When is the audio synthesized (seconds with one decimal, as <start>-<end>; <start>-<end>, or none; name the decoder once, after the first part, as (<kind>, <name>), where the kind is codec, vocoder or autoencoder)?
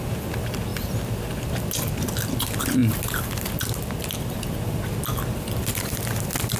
none